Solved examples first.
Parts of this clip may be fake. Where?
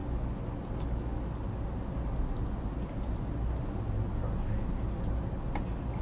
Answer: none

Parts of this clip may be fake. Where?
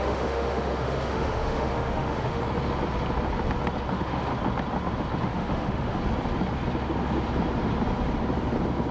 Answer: 0.0-2.4 (autoencoder, DAC-VAE); 3.9-4.3; 5.2-6.0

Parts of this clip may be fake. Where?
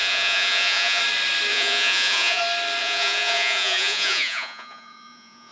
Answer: 0.0-1.0 (vocoder, Vocos); 1.5-2.4; 2.8-5.5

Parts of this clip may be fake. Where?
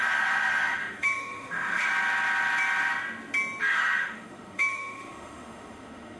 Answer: 0.0-1.9 (autoencoder, DAC-VAE); 3.6-6.2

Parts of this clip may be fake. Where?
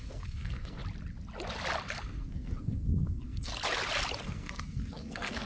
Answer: 0.0-0.8 (codec, SNAC); 2.0-3.5; 4.2-5.5